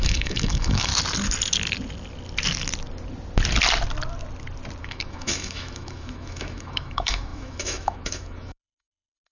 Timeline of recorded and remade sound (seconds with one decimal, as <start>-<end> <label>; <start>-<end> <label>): 0.0-0.9 remade; 0.9-4.8 recorded; 4.8-9.3 remade